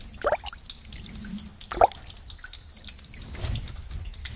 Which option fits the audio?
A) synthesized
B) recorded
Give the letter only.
B